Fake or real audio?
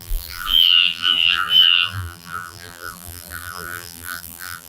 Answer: fake